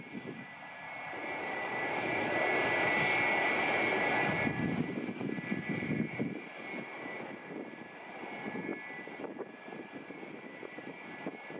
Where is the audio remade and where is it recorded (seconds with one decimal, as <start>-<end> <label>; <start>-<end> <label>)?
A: 0.0-11.6 recorded